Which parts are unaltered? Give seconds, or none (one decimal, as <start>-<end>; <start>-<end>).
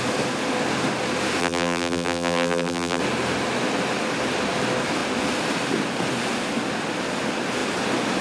0.0-1.4; 3.0-8.2